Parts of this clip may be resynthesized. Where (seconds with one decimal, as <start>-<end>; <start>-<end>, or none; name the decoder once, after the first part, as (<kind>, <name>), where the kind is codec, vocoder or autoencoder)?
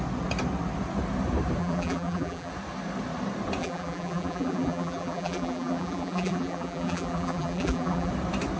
1.6-2.5 (vocoder, BigVGAN v2); 3.6-8.1